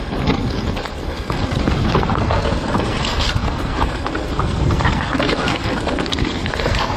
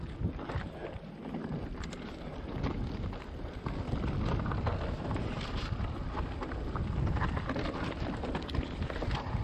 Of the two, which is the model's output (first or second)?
first